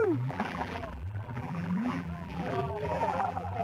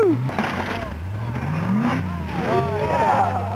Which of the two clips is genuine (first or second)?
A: second